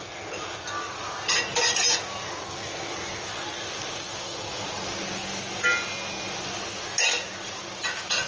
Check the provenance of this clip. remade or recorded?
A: recorded